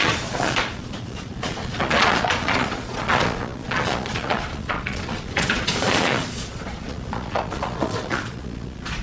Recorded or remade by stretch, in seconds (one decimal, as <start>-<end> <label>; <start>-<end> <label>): 0.0-9.0 remade